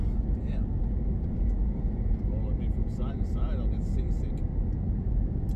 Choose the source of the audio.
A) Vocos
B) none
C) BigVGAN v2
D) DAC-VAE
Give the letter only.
B